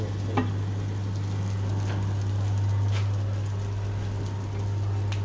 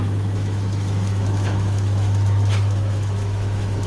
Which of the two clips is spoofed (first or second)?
second